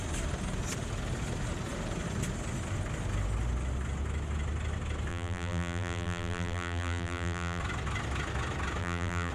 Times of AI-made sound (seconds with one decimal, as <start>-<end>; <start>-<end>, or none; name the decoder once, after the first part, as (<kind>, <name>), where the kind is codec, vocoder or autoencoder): 5.1-7.6 (vocoder, BigVGAN v2); 8.8-9.3